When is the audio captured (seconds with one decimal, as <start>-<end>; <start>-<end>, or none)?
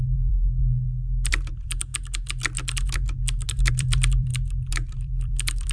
0.6-1.3; 1.9-3.7